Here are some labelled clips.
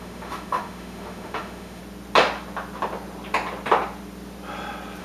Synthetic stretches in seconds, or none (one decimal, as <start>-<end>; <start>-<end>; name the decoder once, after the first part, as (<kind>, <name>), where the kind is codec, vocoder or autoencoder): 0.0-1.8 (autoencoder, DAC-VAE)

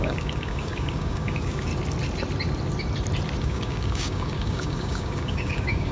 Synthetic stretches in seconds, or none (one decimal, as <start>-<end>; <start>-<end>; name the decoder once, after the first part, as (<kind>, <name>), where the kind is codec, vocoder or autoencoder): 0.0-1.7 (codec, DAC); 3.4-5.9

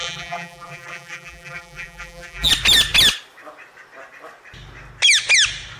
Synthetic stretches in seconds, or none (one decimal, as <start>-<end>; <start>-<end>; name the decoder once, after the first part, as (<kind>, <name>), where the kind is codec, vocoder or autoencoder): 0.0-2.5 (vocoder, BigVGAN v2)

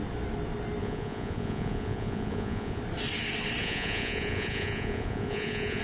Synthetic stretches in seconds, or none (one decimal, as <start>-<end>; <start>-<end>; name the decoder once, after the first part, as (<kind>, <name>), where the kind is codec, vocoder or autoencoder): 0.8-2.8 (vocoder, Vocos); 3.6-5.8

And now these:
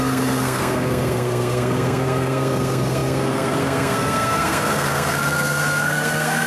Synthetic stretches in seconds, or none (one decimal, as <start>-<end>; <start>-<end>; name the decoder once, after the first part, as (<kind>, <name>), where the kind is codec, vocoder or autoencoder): 0.0-6.5 (codec, SNAC)

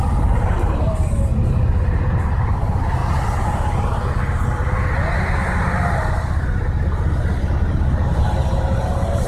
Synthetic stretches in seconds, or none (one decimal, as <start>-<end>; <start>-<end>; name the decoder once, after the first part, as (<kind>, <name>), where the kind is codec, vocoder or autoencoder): 0.0-3.0 (vocoder, BigVGAN v2); 8.2-9.3